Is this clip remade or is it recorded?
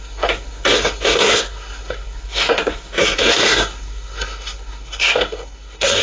remade